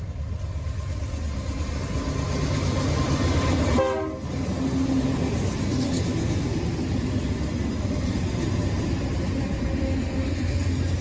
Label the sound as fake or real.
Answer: real